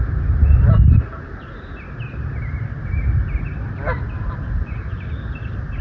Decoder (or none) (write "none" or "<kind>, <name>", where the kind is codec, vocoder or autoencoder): none